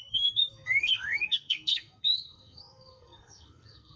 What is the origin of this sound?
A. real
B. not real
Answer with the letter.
B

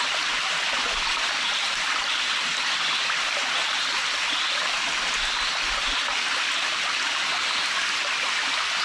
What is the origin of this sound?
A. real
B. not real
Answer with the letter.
A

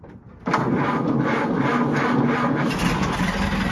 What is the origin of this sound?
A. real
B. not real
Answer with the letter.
A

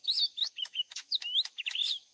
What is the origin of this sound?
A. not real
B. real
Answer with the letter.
A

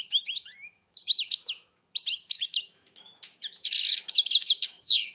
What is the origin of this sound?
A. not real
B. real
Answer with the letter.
A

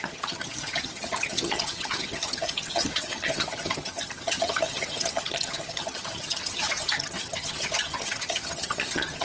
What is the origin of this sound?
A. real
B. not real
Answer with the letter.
B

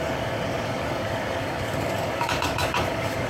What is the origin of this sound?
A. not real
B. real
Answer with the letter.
A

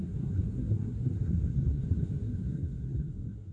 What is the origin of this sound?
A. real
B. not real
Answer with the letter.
B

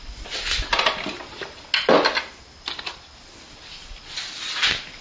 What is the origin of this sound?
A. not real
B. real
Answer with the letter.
B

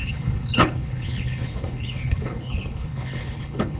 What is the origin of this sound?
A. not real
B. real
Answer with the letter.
A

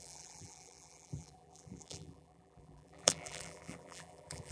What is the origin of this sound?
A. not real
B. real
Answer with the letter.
A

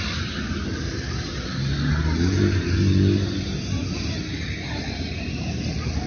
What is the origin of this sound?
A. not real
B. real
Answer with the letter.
B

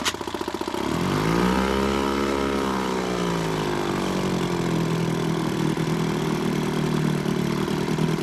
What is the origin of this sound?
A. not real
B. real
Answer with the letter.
B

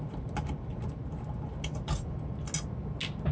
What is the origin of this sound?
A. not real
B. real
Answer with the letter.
B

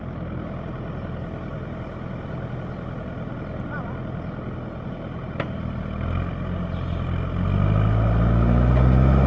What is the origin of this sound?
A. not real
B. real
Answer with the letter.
B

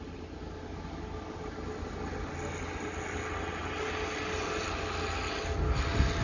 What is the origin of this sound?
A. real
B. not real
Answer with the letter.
A